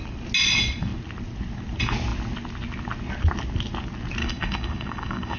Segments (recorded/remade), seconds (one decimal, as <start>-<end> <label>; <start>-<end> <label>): 0.0-4.2 recorded; 4.2-5.4 remade